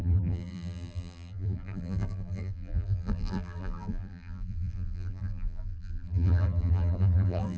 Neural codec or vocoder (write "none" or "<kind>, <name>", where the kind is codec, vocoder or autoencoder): vocoder, BigVGAN v2